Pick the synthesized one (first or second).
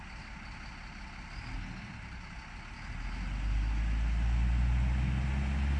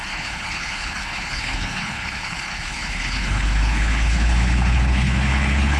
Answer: second